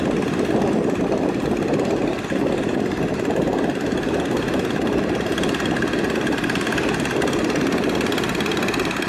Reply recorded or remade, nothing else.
recorded